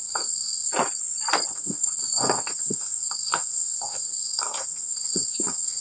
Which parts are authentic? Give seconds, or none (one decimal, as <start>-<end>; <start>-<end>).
0.7-1.5